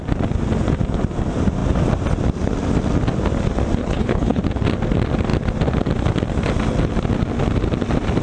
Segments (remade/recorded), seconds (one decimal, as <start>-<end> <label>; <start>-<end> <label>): 0.0-3.8 recorded; 3.8-4.4 remade; 4.4-8.2 recorded